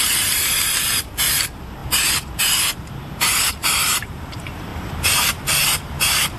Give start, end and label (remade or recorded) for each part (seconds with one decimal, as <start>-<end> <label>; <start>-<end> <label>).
0.0-6.4 remade